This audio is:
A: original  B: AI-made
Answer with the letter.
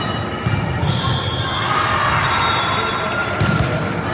A